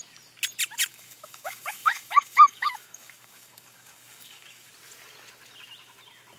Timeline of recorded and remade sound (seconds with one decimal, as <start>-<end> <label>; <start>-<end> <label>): 0.0-0.9 recorded; 0.9-4.7 remade; 4.7-6.4 recorded